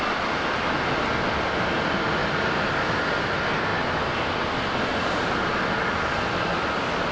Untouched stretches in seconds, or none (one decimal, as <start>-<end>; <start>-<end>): 0.0-2.2; 3.0-7.1